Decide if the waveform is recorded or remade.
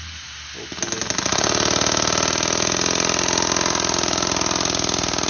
recorded